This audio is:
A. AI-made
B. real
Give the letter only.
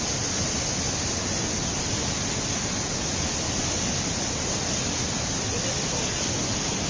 B